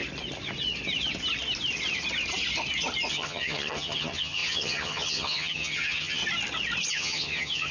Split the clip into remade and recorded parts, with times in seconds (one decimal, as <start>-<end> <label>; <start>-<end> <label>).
0.0-3.1 recorded; 3.1-6.2 remade; 6.2-6.9 recorded; 6.9-7.7 remade